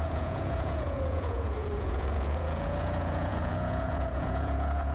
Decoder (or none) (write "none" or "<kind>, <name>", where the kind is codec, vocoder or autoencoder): vocoder, Vocos